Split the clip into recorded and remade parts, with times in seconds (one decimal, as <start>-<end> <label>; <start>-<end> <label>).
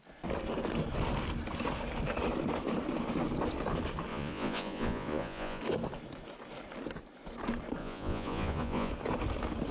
0.0-4.1 recorded; 4.1-5.6 remade; 5.6-7.8 recorded; 7.8-8.9 remade; 8.9-9.7 recorded